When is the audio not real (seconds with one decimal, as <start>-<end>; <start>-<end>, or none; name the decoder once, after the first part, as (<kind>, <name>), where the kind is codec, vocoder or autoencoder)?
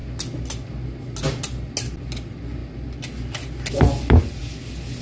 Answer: none